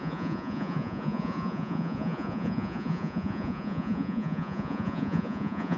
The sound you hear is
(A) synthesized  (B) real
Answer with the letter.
A